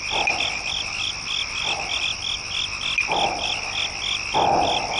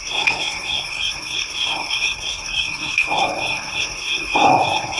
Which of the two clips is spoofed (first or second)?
second